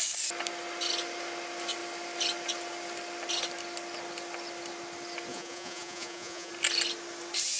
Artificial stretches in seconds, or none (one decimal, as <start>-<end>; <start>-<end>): 5.3-6.5